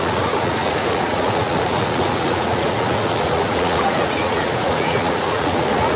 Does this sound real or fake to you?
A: fake